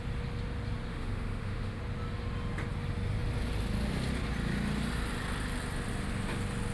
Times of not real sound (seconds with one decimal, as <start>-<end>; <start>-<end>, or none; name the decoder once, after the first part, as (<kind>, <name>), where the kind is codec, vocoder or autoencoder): 0.9-1.8 (autoencoder, DAC-VAE)

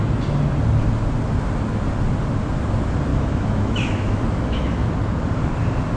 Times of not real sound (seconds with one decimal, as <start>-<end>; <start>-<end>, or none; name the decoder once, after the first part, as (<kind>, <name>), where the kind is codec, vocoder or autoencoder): 3.1-4.9 (autoencoder, DAC-VAE)

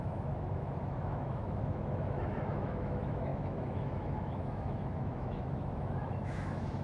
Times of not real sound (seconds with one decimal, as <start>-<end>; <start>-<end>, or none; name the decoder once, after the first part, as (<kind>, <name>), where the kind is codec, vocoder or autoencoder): 0.0-6.8 (autoencoder, DAC-VAE)